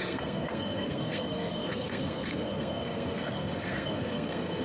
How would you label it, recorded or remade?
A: remade